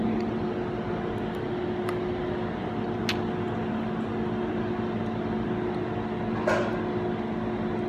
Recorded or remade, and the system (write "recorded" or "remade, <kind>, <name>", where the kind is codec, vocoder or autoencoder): recorded